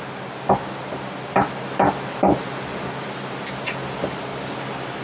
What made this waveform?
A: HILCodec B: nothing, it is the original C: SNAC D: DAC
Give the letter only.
B